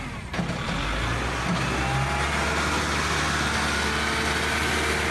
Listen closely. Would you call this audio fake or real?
real